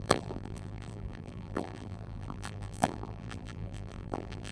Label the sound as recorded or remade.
remade